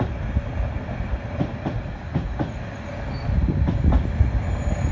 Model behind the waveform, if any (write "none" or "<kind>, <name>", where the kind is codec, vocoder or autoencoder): none